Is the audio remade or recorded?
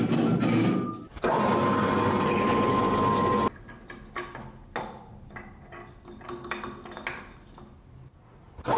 recorded